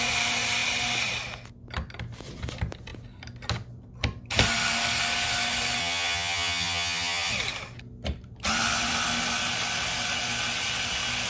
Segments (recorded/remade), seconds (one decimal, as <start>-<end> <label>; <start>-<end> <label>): 0.0-5.8 recorded; 5.8-7.3 remade; 7.3-11.3 recorded